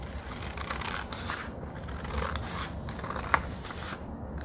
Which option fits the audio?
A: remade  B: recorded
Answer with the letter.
B